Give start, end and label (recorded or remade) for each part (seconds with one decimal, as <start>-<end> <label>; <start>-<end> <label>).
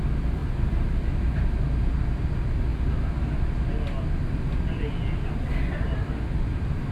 0.0-6.9 recorded